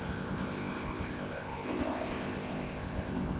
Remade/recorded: remade